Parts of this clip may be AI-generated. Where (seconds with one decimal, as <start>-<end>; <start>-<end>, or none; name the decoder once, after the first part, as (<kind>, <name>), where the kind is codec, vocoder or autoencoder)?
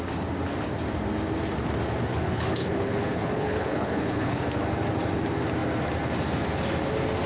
2.1-4.4 (codec, HILCodec)